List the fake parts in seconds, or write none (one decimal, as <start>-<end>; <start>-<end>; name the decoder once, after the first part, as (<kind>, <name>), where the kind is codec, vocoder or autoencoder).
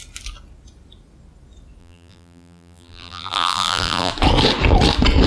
1.8-4.1 (vocoder, BigVGAN v2)